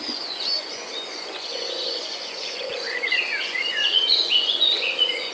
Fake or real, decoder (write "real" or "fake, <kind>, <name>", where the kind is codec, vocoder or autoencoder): fake, vocoder, Vocos